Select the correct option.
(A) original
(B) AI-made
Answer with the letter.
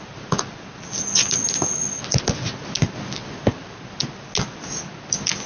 A